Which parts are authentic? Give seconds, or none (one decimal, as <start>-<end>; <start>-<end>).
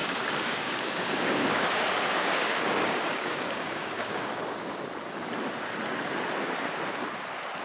4.4-7.6